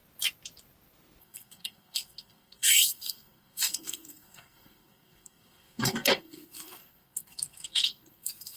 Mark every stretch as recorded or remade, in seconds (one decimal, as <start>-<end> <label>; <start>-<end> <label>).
0.0-1.2 recorded; 1.2-8.6 remade